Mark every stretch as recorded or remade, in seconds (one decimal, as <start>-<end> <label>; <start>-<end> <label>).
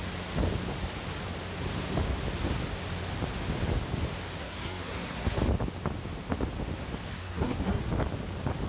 0.0-4.4 recorded; 4.4-5.4 remade; 5.4-7.1 recorded; 7.1-7.8 remade; 7.8-8.7 recorded